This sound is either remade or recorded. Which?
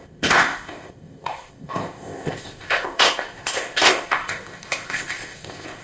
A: remade